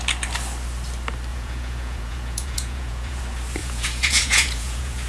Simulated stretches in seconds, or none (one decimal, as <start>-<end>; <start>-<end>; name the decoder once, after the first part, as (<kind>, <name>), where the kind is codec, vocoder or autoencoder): 1.3-3.2 (vocoder, Vocos); 3.6-5.1